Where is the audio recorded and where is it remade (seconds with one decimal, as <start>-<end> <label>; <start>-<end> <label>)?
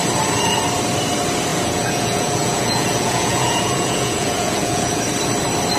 0.0-1.5 recorded; 1.5-5.0 remade; 5.0-5.8 recorded